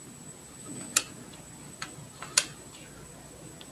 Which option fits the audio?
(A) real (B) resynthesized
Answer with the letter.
A